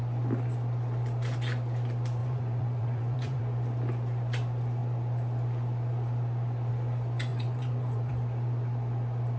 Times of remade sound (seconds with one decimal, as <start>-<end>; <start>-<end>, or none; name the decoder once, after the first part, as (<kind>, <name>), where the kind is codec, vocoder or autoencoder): 2.2-3.4 (vocoder, Vocos); 7.3-8.1